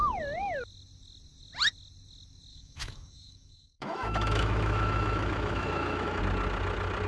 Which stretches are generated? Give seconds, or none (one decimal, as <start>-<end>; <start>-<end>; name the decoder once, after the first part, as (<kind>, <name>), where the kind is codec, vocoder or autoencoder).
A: 2.5-6.2 (autoencoder, DAC-VAE)